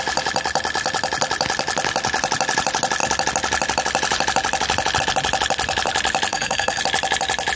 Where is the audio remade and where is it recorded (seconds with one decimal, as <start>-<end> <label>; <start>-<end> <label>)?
0.0-6.3 recorded; 6.3-6.8 remade; 6.8-7.6 recorded